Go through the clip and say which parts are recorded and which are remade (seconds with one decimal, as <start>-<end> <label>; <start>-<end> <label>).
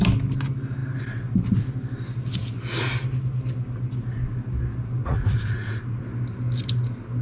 0.0-5.0 recorded; 5.0-6.0 remade; 6.0-7.2 recorded